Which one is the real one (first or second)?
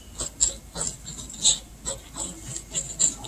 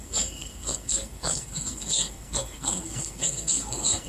first